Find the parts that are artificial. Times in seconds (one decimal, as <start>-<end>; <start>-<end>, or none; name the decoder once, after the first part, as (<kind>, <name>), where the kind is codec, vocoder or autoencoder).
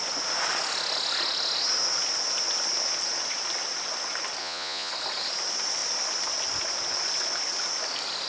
4.4-4.9 (vocoder, Vocos)